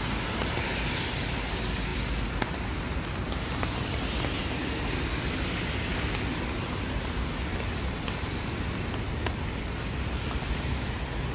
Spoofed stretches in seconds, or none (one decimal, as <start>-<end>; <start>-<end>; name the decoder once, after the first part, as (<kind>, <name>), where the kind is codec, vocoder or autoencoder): none